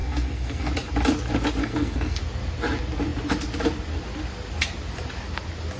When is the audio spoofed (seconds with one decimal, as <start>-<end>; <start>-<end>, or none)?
0.0-0.7; 1.6-2.2